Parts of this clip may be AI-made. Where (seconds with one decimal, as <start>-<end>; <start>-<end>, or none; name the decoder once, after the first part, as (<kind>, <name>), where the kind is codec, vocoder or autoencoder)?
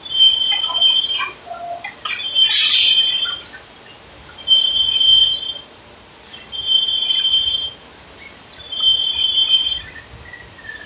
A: none